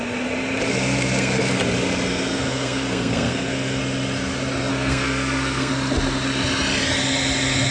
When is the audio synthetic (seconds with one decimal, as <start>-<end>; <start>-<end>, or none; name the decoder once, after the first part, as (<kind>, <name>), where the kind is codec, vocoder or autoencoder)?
0.7-1.4 (codec, SNAC); 2.1-3.8; 4.7-5.7